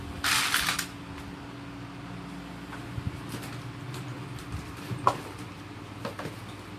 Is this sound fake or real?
real